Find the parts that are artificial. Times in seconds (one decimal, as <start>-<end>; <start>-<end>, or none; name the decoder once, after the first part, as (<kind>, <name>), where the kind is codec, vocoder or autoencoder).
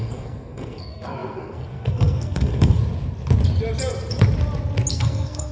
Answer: 0.0-2.8 (codec, SNAC); 4.9-5.5